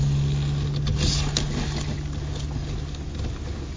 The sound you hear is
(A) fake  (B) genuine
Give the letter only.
B